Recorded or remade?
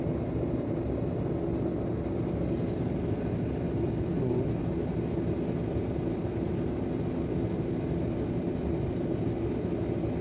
recorded